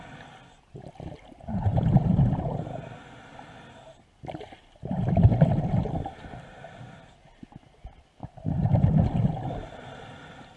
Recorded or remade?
recorded